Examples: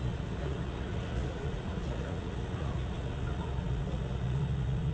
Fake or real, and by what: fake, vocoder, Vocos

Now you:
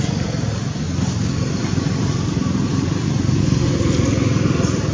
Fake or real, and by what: real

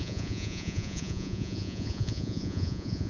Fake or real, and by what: fake, vocoder, Vocos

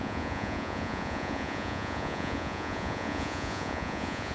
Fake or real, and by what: fake, vocoder, Vocos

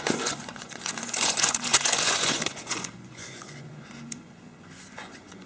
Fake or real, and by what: fake, vocoder, Vocos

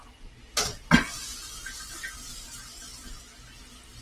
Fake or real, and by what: real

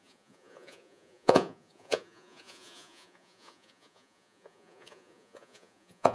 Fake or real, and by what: fake, vocoder, Vocos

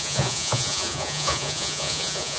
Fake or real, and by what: fake, vocoder, Vocos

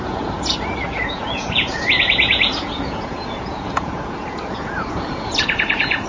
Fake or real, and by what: fake, vocoder, Vocos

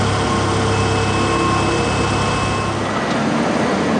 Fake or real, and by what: real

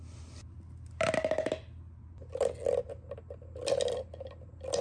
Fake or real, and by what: real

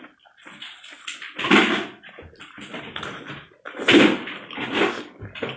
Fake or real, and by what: real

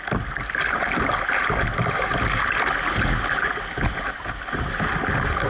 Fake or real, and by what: real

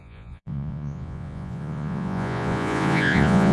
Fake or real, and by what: fake, vocoder, Vocos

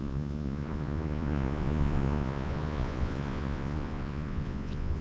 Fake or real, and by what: fake, vocoder, Vocos